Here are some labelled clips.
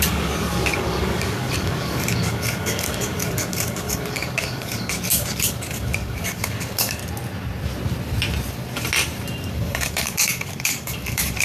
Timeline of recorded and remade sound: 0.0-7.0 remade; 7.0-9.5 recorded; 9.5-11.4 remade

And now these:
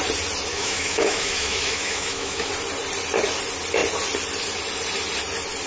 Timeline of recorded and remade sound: 0.0-0.5 recorded; 0.5-2.5 remade; 2.5-5.7 recorded

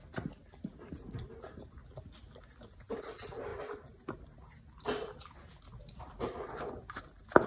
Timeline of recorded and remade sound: 0.0-7.5 recorded

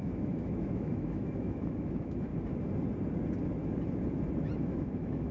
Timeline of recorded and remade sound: 0.0-2.3 remade; 2.3-4.6 recorded; 4.6-5.3 remade

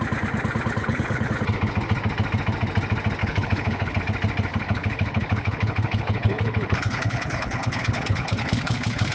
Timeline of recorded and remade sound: 0.0-0.8 recorded; 0.8-1.3 remade; 1.3-3.2 recorded; 3.2-4.0 remade; 4.0-4.5 recorded; 4.5-9.1 remade

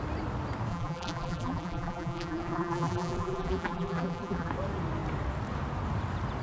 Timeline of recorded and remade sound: 0.0-0.7 recorded; 0.7-4.5 remade; 4.5-6.4 recorded